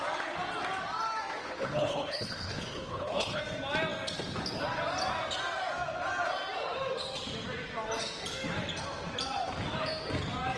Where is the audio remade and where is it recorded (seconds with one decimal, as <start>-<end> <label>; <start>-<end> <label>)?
0.0-1.4 recorded; 1.4-3.4 remade; 3.4-10.6 recorded